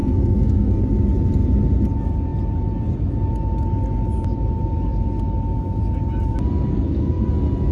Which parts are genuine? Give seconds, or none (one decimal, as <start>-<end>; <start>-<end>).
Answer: 0.8-6.7; 7.3-7.7